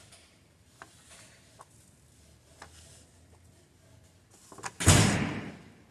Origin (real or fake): real